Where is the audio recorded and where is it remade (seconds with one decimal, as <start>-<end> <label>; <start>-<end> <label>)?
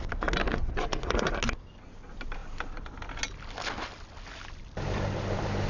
0.0-0.5 recorded; 0.5-1.3 remade; 1.3-5.7 recorded